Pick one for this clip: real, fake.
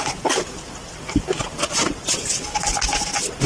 real